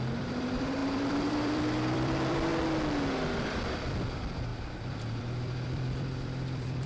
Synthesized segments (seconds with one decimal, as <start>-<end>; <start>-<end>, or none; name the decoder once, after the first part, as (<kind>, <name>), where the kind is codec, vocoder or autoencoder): 0.0-2.5 (vocoder, BigVGAN v2); 3.4-4.5; 5.2-6.9